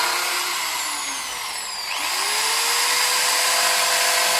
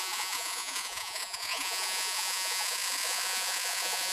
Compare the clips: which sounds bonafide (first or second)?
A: first